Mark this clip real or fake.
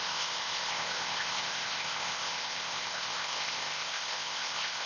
fake